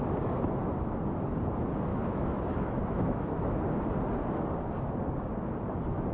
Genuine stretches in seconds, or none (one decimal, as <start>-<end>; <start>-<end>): 0.0-1.9; 3.6-6.1